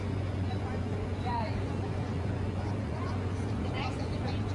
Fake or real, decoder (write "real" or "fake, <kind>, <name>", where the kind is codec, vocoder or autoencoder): fake, vocoder, Vocos